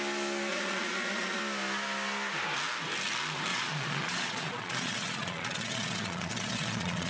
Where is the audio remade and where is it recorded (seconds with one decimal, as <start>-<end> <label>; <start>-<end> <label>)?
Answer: 0.0-0.5 recorded; 0.5-1.4 remade; 1.4-3.5 recorded; 3.5-7.1 remade